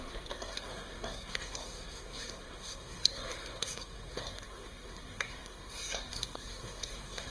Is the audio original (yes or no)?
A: no